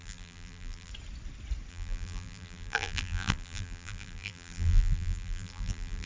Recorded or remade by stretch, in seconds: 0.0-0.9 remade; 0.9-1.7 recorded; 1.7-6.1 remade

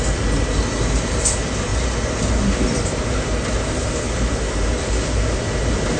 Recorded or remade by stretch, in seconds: 0.0-6.0 recorded

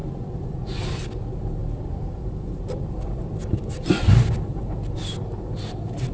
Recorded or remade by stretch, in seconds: 0.0-0.6 remade; 0.6-1.6 recorded; 1.6-3.2 remade; 3.2-6.1 recorded

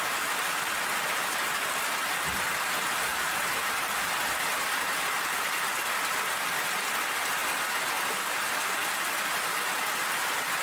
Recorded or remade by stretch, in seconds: 0.0-3.1 recorded; 3.1-6.0 remade; 6.0-10.6 recorded

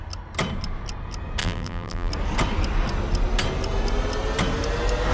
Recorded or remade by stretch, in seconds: 0.0-1.4 recorded; 1.4-2.1 remade; 2.1-5.1 recorded